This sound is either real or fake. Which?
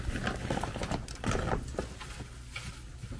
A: real